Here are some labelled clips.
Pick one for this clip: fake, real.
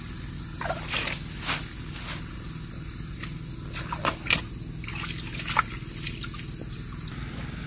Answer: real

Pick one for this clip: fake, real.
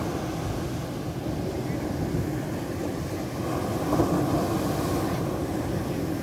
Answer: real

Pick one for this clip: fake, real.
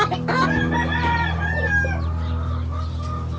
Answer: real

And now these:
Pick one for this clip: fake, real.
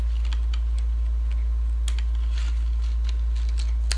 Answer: real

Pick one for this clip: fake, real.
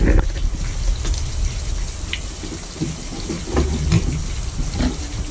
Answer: real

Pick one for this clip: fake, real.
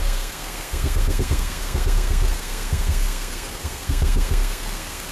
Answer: fake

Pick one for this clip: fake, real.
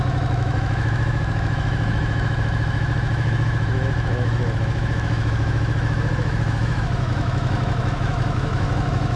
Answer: fake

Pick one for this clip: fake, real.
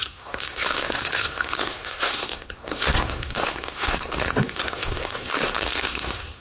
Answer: fake